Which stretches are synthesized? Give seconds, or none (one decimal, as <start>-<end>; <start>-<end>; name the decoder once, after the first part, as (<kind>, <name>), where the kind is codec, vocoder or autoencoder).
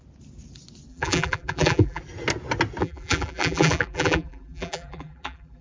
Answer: 0.9-2.0 (vocoder, BigVGAN v2); 2.8-5.6